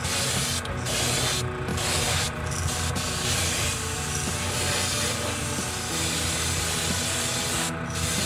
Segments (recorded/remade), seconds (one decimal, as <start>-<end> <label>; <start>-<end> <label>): 0.0-1.7 recorded; 1.7-2.6 remade; 2.6-8.3 recorded